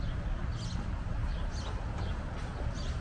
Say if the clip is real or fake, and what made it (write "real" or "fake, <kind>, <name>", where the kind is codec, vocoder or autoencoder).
real